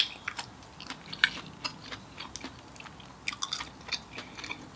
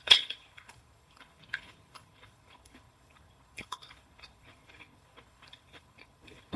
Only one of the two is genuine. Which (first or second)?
first